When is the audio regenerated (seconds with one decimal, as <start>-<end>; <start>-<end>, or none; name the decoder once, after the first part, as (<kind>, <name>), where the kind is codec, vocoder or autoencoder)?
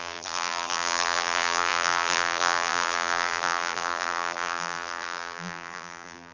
0.0-6.3 (vocoder, BigVGAN v2)